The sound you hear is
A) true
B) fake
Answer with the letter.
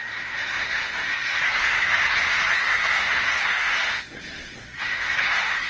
B